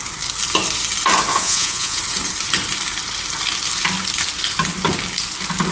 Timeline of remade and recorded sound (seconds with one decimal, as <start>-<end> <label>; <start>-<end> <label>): 0.0-1.3 recorded; 1.3-2.0 remade; 2.0-5.7 recorded